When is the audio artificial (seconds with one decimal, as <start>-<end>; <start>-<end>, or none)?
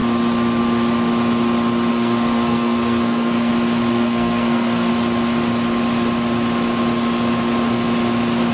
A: 1.9-3.5; 3.9-4.9